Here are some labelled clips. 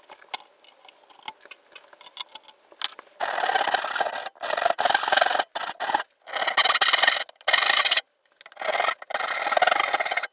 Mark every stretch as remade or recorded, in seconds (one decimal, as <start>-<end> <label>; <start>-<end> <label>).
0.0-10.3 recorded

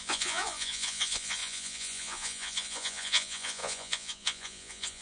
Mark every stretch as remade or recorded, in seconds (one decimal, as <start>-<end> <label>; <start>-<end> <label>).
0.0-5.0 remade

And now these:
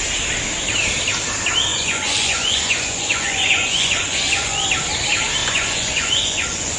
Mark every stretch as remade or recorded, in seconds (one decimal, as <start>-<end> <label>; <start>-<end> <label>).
0.0-1.7 recorded; 1.7-4.6 remade; 4.6-5.4 recorded; 5.4-6.8 remade

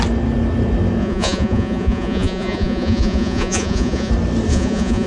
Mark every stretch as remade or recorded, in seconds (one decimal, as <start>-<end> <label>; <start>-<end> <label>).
0.0-1.0 recorded; 1.0-4.1 remade; 4.1-4.5 recorded; 4.5-5.1 remade